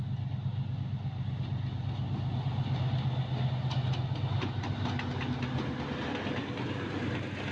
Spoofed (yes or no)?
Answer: no